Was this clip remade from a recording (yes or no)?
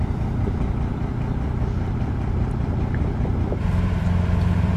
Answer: yes